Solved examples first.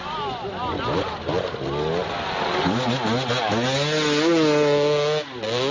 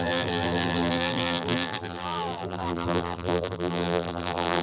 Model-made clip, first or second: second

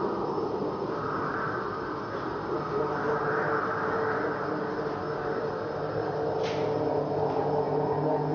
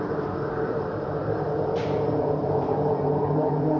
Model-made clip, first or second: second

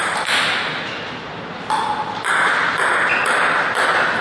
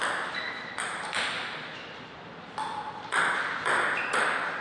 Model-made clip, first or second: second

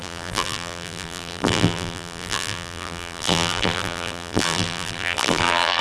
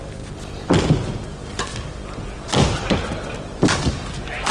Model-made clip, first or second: first